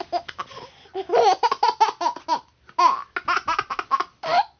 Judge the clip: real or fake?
real